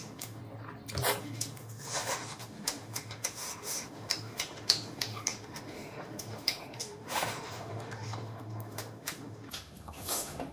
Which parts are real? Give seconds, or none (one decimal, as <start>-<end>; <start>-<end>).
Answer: 0.4-1.2